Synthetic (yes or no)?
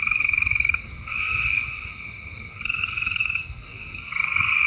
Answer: yes